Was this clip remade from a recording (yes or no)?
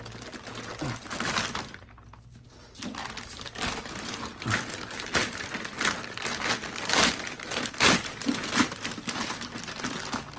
no